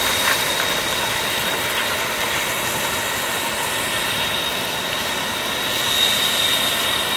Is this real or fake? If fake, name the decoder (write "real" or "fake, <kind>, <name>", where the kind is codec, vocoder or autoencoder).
real